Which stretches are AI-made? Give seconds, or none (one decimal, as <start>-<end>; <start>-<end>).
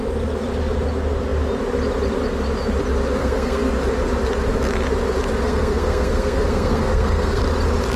3.2-3.7; 5.4-7.4